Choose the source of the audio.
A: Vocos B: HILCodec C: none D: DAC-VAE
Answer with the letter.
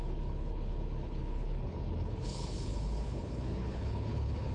B